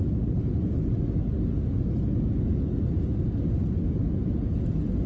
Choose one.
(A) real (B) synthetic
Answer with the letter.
A